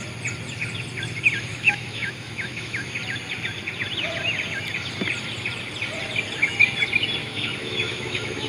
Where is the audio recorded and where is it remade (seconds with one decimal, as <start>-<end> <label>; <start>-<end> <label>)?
0.0-1.5 recorded; 1.5-2.9 remade; 2.9-7.2 recorded; 7.2-8.5 remade